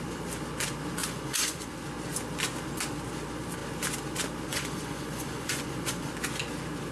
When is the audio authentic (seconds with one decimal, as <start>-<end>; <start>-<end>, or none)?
0.0-1.0; 1.7-4.5; 6.1-6.9